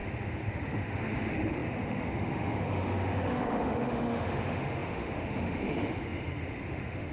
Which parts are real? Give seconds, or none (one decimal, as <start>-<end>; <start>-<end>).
none